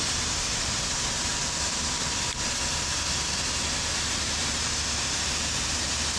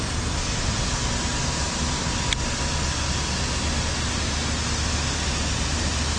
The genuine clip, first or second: second